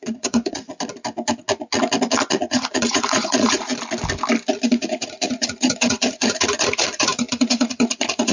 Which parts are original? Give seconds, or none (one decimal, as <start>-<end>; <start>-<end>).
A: 0.7-2.3; 3.7-4.7